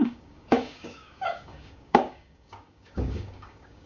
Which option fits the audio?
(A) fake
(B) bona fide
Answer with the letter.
A